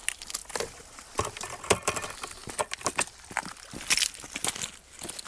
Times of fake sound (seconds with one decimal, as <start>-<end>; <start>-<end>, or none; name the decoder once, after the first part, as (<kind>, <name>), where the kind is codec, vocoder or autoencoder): 0.4-1.9 (vocoder, BigVGAN v2)